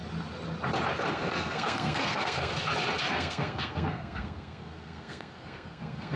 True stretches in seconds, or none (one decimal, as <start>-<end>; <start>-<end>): 0.0-1.1; 2.5-3.0